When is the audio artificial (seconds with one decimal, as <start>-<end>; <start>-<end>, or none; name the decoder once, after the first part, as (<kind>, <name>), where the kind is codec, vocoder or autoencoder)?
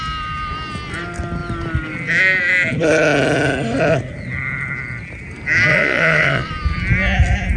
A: 5.7-6.5 (vocoder, Vocos)